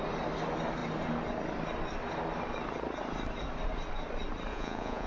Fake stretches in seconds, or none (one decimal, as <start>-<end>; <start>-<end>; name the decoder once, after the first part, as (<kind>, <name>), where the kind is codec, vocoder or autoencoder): 4.5-5.1 (vocoder, Vocos)